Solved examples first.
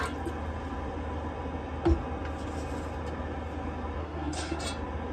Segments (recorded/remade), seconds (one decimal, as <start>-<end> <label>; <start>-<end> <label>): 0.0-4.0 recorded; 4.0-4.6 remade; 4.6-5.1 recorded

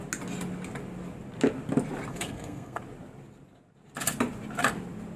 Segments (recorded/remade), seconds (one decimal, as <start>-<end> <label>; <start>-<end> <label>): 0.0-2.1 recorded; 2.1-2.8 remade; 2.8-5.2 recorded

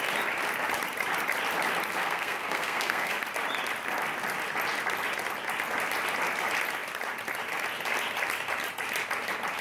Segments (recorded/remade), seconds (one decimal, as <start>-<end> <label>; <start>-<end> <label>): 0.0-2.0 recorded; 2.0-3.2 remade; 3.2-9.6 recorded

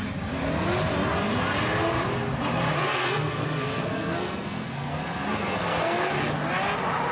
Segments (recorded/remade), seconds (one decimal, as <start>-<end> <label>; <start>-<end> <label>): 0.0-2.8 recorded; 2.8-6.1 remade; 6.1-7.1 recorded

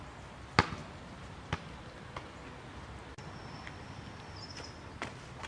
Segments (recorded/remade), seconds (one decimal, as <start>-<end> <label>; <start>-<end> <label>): 0.0-5.5 recorded